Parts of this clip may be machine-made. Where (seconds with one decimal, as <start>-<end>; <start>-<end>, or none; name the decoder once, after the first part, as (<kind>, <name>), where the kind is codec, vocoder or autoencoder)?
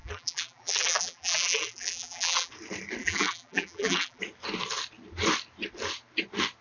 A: 0.0-2.5 (vocoder, BigVGAN v2); 3.0-4.2